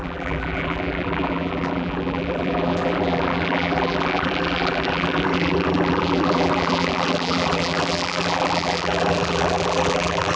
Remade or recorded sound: remade